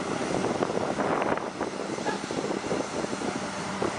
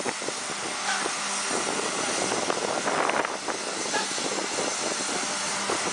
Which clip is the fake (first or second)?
first